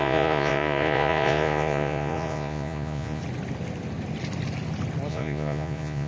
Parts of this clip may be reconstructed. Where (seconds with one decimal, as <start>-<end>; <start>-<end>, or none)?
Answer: 0.0-3.2; 5.1-6.1